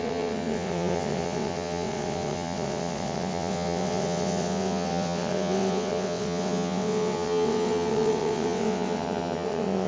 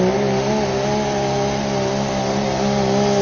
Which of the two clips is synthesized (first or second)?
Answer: first